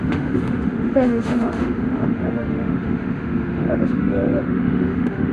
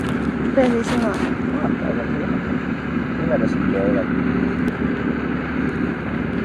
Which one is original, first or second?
second